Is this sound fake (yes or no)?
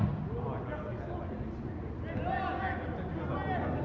no